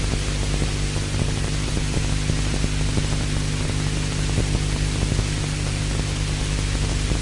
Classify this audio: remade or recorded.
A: recorded